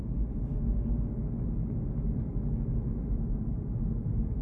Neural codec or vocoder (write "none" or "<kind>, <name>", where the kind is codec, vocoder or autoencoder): none